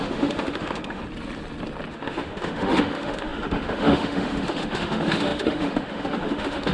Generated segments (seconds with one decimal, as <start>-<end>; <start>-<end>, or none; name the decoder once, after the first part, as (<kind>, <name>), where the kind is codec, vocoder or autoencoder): 0.0-1.0 (autoencoder, DAC-VAE); 1.9-6.7